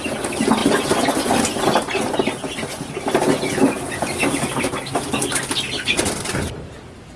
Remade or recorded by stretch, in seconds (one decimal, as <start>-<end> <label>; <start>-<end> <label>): 0.0-7.2 recorded